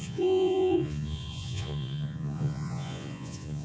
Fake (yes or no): yes